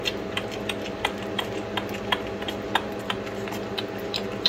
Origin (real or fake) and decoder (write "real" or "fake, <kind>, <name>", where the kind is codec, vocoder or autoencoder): real